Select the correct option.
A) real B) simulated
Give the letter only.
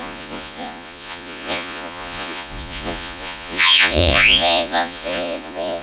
B